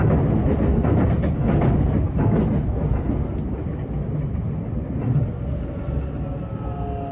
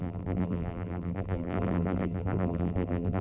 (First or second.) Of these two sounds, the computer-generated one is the second